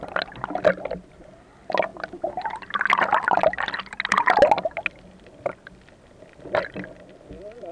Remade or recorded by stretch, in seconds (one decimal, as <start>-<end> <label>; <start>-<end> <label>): 0.0-7.7 recorded